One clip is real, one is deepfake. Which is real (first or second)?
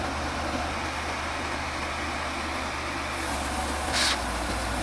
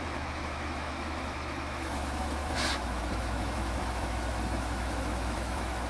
first